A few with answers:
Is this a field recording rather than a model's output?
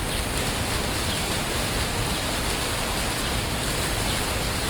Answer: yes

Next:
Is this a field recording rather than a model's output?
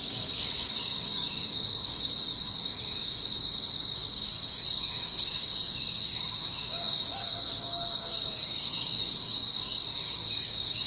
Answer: no